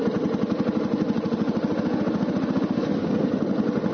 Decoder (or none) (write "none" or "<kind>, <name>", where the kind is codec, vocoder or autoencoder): none